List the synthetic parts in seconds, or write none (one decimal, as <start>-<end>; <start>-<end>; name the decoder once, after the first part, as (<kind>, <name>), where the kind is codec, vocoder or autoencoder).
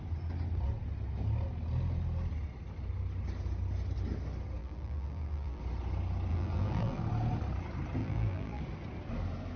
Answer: 4.6-5.6 (vocoder, BigVGAN v2); 6.3-7.0; 8.0-8.6